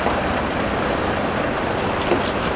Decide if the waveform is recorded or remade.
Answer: recorded